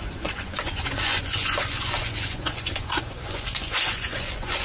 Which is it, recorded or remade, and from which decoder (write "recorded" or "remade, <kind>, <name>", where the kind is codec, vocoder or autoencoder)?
remade, vocoder, Vocos